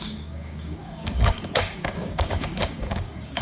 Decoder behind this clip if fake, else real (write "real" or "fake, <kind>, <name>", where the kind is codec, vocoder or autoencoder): fake, codec, DAC